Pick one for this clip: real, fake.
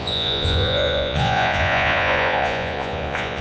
fake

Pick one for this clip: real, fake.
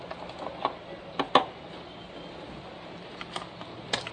real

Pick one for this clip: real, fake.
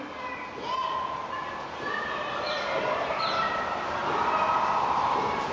real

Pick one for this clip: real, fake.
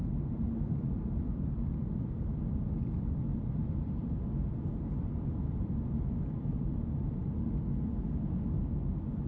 fake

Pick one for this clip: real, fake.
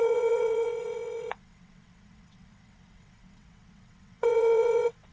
fake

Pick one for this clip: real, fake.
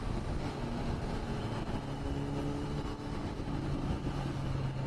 real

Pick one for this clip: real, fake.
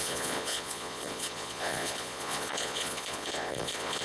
fake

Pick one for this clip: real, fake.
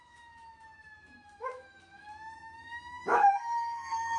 fake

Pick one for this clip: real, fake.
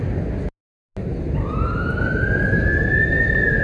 real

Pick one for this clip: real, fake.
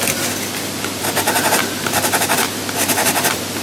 real